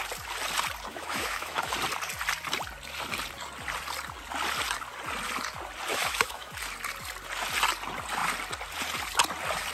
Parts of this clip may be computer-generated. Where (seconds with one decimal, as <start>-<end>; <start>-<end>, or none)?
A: 0.9-1.7; 5.9-6.5